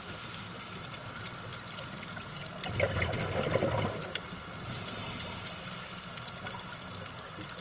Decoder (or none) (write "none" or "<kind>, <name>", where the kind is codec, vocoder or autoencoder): none